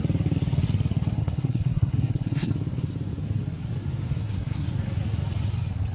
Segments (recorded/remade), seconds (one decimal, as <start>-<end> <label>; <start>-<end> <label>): 0.0-1.2 recorded; 1.2-2.5 remade; 2.5-4.1 recorded; 4.1-4.7 remade; 4.7-5.9 recorded